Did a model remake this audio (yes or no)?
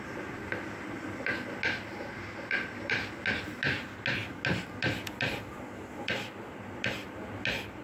no